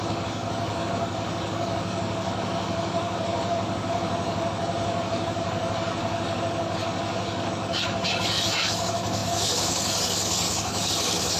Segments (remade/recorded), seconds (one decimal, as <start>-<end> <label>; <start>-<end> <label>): 0.0-11.4 remade